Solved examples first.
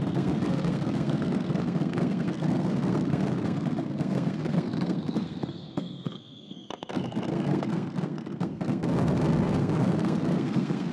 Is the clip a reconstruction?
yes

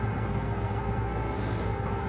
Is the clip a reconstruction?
yes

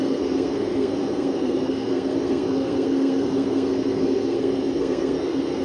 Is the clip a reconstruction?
yes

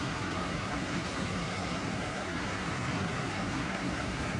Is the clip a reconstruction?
yes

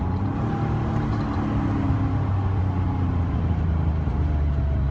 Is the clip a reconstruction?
no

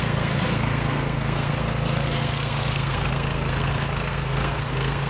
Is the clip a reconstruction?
yes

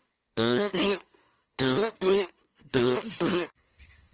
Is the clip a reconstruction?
yes